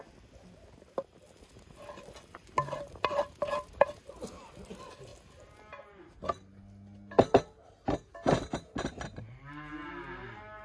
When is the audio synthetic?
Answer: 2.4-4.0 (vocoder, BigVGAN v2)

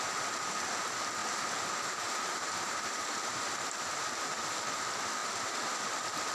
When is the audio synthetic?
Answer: 1.2-3.4 (vocoder, BigVGAN v2)

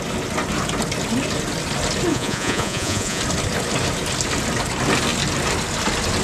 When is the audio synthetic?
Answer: 2.1-3.2 (vocoder, Vocos)

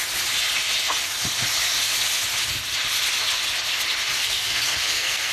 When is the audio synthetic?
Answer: 4.2-5.3 (codec, SNAC)

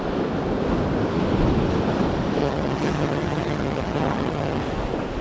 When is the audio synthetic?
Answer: 2.4-4.6 (vocoder, HiFi-GAN)

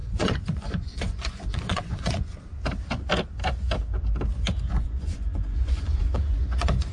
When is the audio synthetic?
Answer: 0.0-2.3 (vocoder, Vocos); 4.7-6.9